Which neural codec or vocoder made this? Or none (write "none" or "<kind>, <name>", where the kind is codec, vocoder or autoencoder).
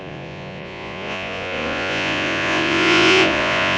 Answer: vocoder, Vocos